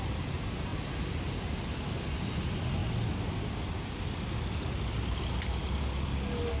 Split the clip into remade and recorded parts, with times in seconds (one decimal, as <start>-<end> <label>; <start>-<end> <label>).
0.0-6.6 recorded